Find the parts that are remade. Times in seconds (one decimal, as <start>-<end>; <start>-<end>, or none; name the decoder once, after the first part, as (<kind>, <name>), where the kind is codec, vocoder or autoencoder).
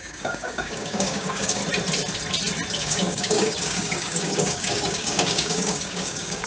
0.0-1.6 (codec, DAC); 2.8-6.5